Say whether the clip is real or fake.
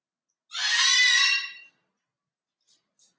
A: real